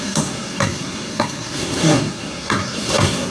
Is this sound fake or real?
fake